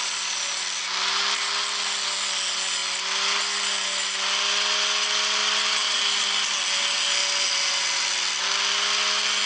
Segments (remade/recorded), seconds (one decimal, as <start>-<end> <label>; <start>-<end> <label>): 0.0-9.5 recorded